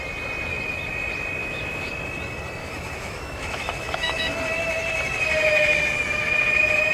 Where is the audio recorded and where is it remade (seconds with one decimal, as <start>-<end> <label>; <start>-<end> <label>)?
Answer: 0.0-1.4 recorded; 1.4-1.9 remade; 1.9-2.6 recorded; 2.6-4.4 remade; 4.4-6.9 recorded